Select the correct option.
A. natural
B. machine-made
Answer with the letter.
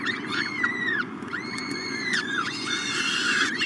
B